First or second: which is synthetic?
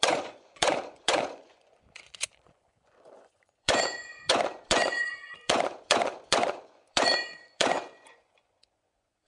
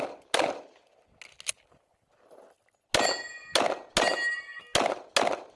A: first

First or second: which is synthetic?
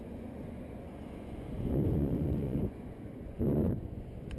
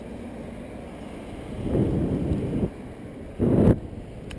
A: first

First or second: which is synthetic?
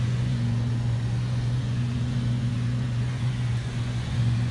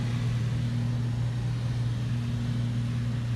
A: first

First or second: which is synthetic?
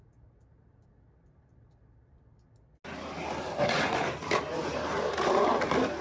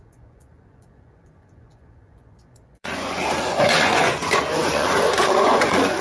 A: second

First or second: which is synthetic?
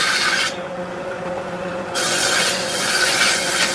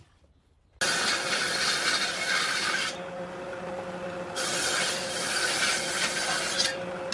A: first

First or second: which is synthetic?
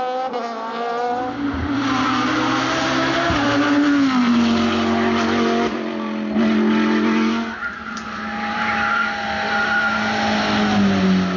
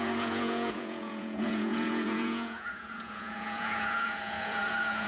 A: second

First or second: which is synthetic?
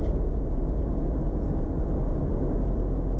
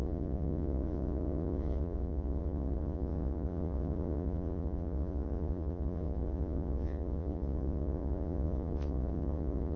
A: second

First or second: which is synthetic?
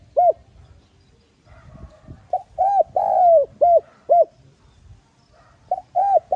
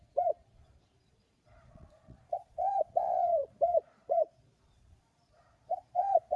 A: second